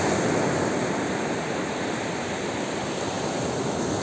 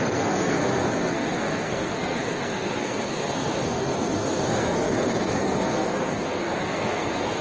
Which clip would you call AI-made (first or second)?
second